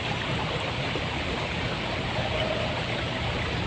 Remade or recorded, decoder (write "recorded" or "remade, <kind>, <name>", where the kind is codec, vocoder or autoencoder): recorded